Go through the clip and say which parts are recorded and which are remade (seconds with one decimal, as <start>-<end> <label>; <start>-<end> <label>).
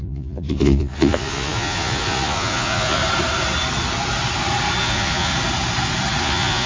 0.0-3.0 remade; 3.0-4.8 recorded; 4.8-5.3 remade; 5.3-6.2 recorded; 6.2-6.7 remade